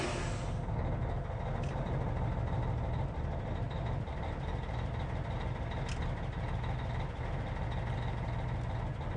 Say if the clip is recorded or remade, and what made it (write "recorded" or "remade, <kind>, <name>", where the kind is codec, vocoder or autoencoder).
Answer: recorded